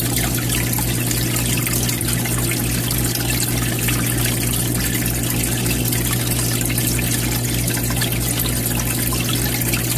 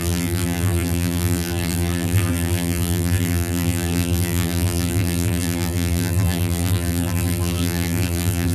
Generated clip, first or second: second